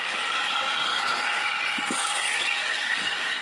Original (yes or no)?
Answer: no